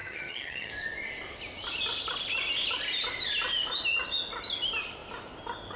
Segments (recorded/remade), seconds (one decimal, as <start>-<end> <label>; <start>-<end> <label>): 0.0-0.7 remade; 0.7-5.8 recorded